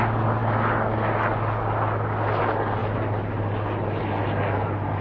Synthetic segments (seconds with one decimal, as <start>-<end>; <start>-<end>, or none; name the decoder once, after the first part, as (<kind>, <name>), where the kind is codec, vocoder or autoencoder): none